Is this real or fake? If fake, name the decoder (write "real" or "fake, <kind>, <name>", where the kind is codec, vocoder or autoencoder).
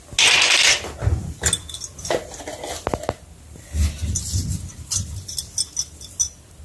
real